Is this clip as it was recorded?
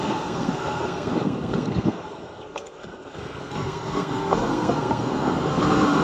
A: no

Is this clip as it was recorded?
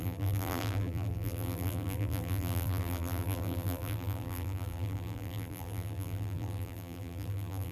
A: no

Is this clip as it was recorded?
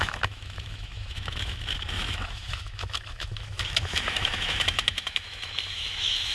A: no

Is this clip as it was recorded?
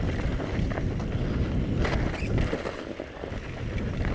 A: yes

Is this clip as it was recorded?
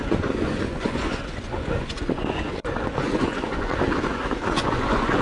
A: no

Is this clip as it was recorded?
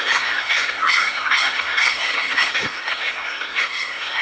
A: no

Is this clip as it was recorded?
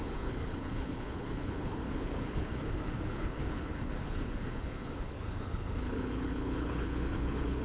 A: no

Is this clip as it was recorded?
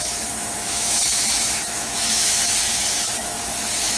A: no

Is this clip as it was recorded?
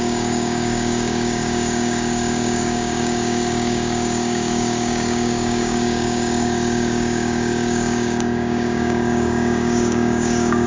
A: no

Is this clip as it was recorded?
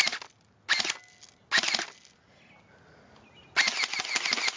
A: yes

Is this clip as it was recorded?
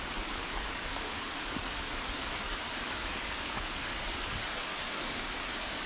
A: no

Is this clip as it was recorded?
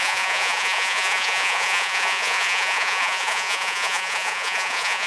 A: no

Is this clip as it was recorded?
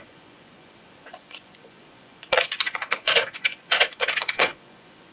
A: no